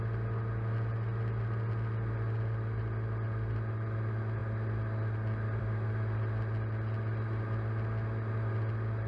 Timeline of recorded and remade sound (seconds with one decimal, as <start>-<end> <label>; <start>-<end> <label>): 0.0-9.1 recorded